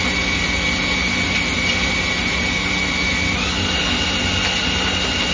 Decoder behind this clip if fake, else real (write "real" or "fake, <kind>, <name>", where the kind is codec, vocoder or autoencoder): real